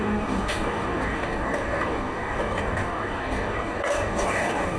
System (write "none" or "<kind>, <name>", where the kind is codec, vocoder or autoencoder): codec, DAC